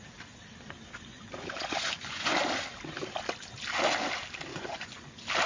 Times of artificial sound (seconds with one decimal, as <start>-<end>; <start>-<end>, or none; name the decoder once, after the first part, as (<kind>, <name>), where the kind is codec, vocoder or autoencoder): 1.1-2.3 (vocoder, Vocos); 4.5-5.1